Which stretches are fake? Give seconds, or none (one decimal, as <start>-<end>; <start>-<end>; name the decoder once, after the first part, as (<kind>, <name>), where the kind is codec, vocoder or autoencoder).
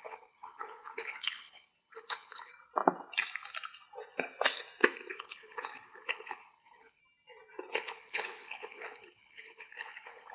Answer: 0.0-2.5 (codec, HILCodec); 5.1-7.0; 7.7-10.3